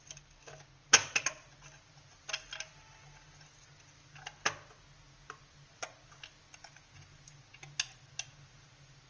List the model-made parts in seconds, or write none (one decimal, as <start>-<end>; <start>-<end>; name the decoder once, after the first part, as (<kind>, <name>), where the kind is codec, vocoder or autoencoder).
none